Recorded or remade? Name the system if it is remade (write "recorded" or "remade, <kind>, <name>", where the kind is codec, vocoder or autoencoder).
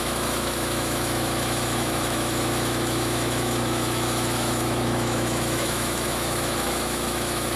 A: remade, autoencoder, DAC-VAE